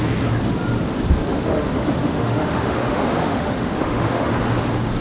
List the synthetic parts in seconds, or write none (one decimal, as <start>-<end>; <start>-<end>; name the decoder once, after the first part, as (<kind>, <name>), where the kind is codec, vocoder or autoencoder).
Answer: 1.3-4.3 (autoencoder, DAC-VAE)